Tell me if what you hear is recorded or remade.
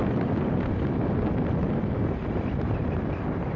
recorded